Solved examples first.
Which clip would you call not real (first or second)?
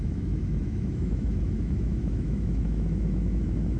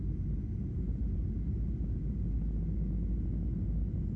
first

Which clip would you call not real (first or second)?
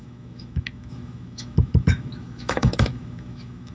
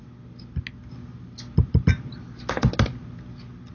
first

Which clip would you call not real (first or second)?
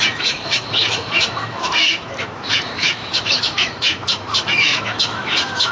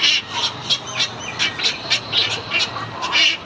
first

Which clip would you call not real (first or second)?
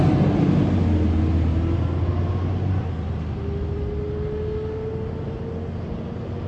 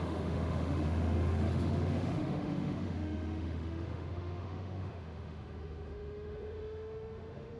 second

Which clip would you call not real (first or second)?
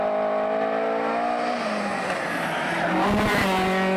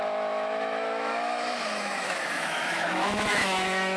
second